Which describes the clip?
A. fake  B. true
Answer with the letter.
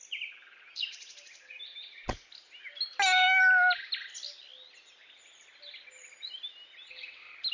B